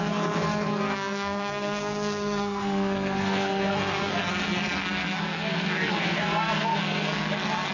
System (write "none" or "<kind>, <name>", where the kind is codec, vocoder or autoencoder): codec, SNAC